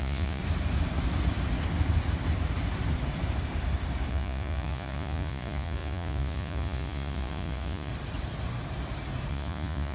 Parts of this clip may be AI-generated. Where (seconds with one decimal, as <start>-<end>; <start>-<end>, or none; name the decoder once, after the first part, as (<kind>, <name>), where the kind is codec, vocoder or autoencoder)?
0.0-0.4 (vocoder, Vocos); 4.1-7.9; 9.3-9.9